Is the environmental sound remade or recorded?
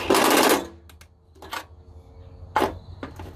recorded